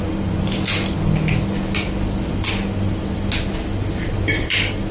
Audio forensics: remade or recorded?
recorded